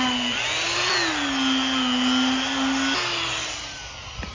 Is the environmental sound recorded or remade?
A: recorded